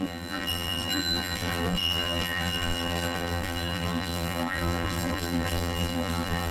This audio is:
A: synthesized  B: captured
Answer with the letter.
A